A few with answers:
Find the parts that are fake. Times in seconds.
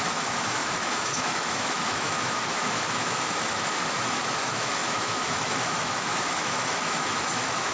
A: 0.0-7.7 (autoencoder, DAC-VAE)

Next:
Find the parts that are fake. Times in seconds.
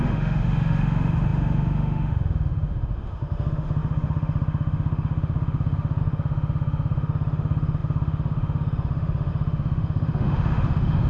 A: 0.0-11.1 (autoencoder, DAC-VAE)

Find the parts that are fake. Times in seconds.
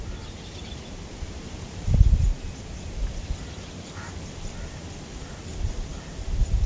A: none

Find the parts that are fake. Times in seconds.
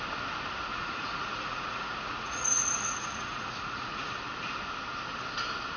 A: 0.7-4.2 (vocoder, Vocos)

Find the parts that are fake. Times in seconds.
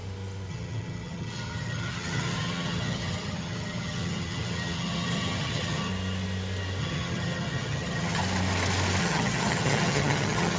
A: 0.5-5.9 (vocoder, HiFi-GAN); 6.8-8.2; 9.0-10.6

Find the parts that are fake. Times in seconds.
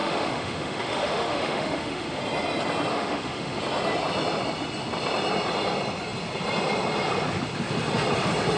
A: 0.0-2.2 (autoencoder, DAC-VAE); 2.9-3.6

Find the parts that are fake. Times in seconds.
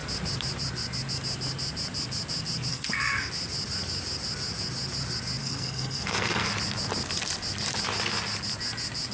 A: 2.7-3.3 (codec, SNAC); 5.4-6.5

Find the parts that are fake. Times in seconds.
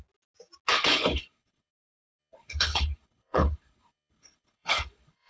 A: 0.7-1.7 (codec, HILCodec); 2.2-5.3